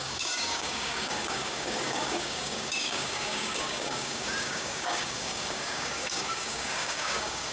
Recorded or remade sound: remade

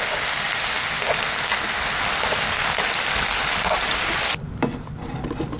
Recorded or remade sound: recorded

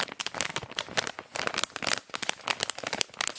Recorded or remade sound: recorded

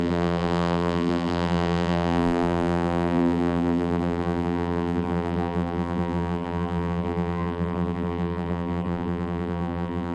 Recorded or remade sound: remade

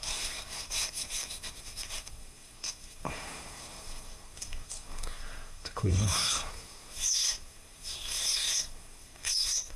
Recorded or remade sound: remade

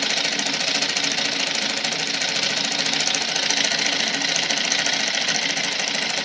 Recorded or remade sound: recorded